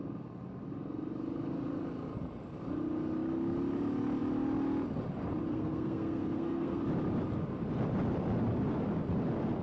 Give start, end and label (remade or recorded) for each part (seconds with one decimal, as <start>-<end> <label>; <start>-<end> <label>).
0.0-5.5 recorded; 5.5-6.8 remade; 6.8-9.6 recorded